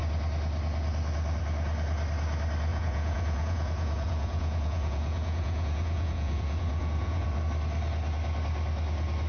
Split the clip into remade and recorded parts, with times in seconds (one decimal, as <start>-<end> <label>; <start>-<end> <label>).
0.0-2.7 recorded; 2.7-7.4 remade; 7.4-9.3 recorded